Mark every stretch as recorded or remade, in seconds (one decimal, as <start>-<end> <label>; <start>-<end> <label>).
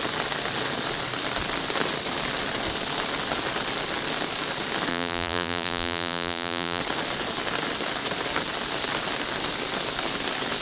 0.0-4.9 recorded; 4.9-6.8 remade; 6.8-10.6 recorded